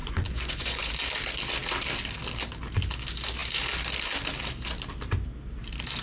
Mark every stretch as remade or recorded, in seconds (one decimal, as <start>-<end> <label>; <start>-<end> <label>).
0.0-0.9 remade; 0.9-6.0 recorded